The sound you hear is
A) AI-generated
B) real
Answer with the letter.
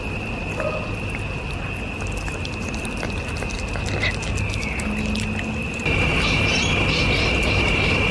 B